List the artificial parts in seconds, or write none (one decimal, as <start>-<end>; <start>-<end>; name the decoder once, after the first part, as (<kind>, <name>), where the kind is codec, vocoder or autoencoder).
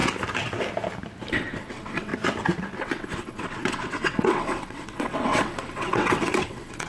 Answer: 1.3-2.1 (vocoder, WaveNeXt); 2.8-6.9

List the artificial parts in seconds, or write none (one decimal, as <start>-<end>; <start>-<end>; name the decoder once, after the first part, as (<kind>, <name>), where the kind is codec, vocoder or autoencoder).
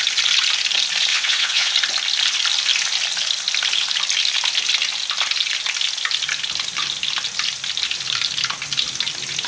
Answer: 1.1-1.7 (vocoder, WaveNeXt)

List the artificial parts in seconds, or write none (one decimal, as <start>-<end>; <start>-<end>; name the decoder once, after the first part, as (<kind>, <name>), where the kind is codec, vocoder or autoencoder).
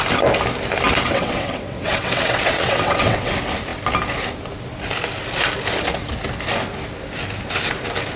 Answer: 1.1-3.3 (vocoder, WaveNeXt)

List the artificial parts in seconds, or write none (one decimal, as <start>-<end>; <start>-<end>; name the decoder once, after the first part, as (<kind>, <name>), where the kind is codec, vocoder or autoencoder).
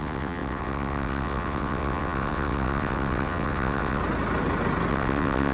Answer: 0.0-4.0 (vocoder, WaveNeXt); 4.9-5.5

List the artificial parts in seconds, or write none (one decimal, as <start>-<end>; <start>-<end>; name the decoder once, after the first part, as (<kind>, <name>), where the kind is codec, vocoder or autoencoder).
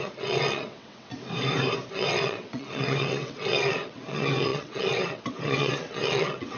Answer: 0.0-1.1 (vocoder, WaveNeXt); 1.9-6.6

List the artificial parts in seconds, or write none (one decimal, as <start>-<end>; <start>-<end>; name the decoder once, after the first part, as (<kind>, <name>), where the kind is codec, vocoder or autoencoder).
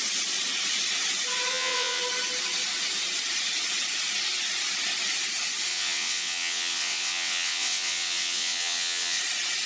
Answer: 1.5-2.0 (vocoder, WaveNeXt); 5.7-9.2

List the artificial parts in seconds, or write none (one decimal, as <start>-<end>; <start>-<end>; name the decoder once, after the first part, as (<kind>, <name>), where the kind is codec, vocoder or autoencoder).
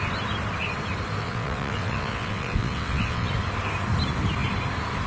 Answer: 1.2-3.3 (vocoder, WaveNeXt)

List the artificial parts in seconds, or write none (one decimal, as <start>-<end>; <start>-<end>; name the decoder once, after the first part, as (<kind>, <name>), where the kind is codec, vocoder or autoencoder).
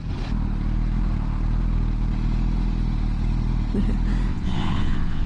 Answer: 4.3-5.3 (vocoder, WaveNeXt)